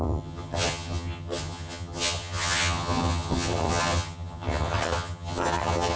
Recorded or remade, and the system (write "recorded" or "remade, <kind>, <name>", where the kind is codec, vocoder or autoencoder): remade, vocoder, HiFi-GAN